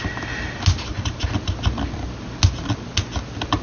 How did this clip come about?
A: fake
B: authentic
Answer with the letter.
B